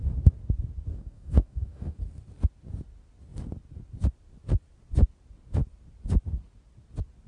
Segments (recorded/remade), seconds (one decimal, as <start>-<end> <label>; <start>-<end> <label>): 0.0-0.9 recorded; 0.9-2.0 remade; 2.0-7.3 recorded